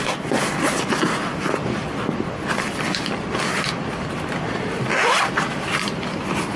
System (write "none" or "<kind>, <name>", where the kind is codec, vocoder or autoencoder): none